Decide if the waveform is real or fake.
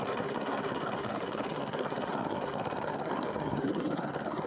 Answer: fake